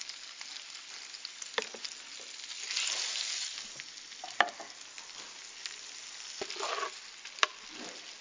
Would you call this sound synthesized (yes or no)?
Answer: no